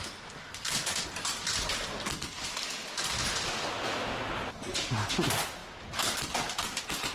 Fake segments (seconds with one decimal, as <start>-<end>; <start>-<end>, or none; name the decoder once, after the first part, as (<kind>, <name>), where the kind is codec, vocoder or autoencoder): none